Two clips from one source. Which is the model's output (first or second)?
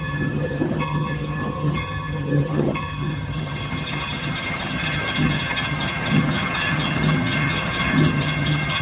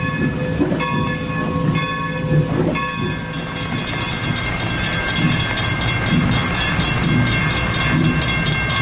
first